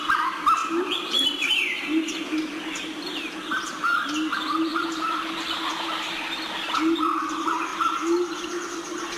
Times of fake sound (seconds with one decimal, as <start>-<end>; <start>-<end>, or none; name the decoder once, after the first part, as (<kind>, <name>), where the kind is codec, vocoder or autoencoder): 0.6-2.2 (vocoder, BigVGAN v2); 4.7-5.9